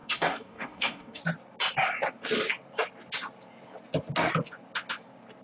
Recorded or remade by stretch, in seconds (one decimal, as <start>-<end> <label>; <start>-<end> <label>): 0.0-1.2 remade; 1.2-5.4 recorded